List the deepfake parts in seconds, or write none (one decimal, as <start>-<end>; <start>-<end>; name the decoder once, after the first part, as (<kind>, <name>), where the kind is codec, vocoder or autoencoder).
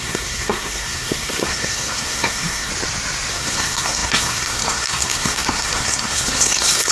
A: 0.0-2.7 (codec, SNAC); 3.3-6.9